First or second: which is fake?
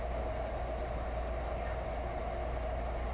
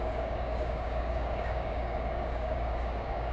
second